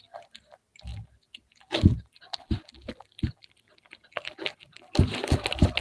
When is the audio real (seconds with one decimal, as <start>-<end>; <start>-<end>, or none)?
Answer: 0.0-5.8